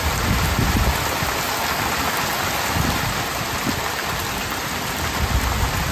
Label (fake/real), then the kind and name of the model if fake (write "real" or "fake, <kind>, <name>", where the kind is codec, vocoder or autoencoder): real